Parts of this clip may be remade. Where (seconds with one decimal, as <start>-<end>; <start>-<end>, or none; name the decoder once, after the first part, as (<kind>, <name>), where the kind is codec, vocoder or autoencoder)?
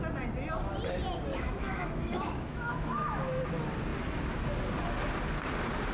1.3-3.4 (autoencoder, DAC-VAE)